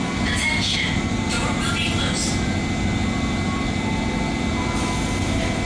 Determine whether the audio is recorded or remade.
recorded